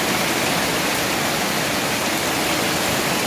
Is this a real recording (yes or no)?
yes